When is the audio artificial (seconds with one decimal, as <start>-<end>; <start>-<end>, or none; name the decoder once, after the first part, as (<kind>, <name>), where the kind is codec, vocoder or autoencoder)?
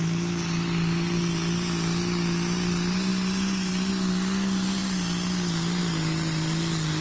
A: none